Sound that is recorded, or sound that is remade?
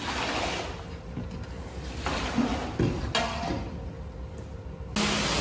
recorded